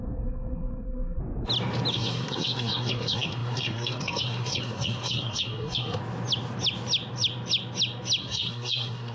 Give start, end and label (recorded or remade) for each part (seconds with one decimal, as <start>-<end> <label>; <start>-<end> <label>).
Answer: 0.0-1.2 remade; 1.2-1.9 recorded; 1.9-6.0 remade; 6.0-8.2 recorded; 8.2-9.1 remade